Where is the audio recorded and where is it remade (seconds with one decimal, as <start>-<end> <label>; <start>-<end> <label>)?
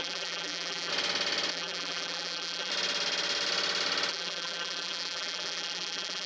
0.0-0.9 remade; 0.9-1.5 recorded; 1.5-2.7 remade; 2.7-4.1 recorded; 4.1-6.3 remade